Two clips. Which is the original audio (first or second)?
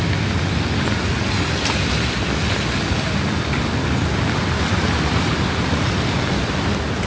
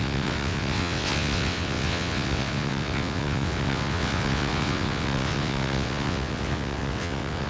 first